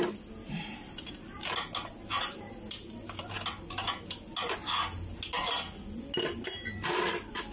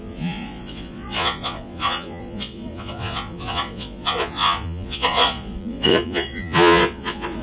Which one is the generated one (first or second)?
second